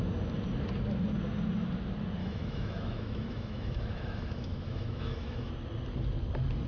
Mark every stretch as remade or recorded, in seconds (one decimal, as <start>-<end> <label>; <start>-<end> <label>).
0.0-2.2 recorded; 2.2-5.5 remade; 5.5-6.7 recorded